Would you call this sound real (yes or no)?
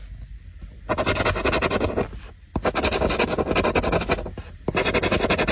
yes